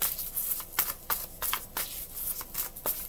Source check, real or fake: real